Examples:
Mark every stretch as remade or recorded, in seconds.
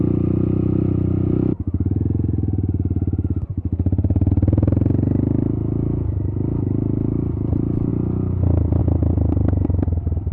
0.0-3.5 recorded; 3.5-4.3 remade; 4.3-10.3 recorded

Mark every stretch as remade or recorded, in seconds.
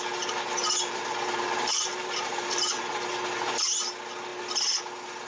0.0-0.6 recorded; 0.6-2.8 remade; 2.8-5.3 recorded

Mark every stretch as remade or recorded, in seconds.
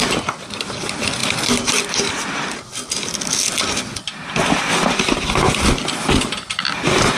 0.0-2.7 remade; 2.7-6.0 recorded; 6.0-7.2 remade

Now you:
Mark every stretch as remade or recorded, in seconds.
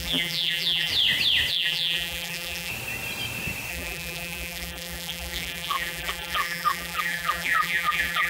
0.0-0.9 remade; 0.9-1.5 recorded; 1.5-2.7 remade; 2.7-3.7 recorded; 3.7-8.3 remade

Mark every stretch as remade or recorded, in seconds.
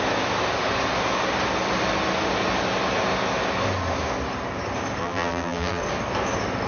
0.0-5.0 recorded; 5.0-5.8 remade; 5.8-6.7 recorded